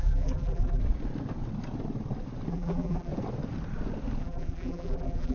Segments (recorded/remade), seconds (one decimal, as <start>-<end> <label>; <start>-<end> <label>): 0.0-0.8 remade; 0.8-2.5 recorded; 2.5-3.1 remade; 3.1-4.2 recorded; 4.2-5.3 remade